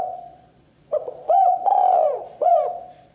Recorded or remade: remade